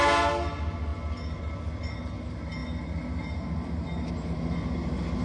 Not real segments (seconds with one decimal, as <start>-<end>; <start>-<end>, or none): none